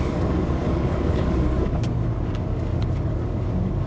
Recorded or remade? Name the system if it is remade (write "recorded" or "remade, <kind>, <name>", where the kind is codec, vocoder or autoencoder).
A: remade, codec, DAC